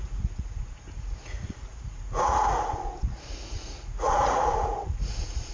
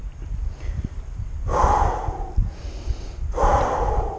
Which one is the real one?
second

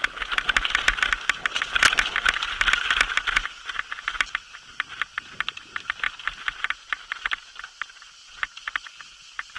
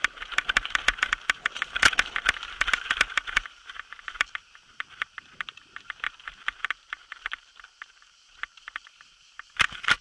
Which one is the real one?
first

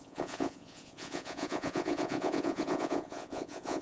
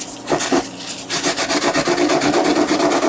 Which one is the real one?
second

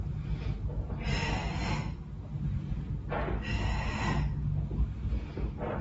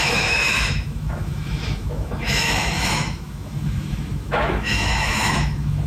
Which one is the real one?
first